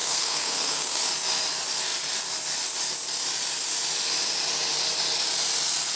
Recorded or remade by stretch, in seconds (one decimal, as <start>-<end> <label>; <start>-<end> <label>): 0.0-1.0 remade; 1.0-6.0 recorded